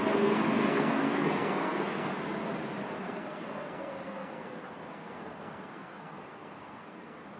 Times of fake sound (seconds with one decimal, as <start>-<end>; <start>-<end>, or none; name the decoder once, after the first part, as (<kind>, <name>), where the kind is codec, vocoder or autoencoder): 0.0-2.1 (codec, SNAC); 2.9-7.4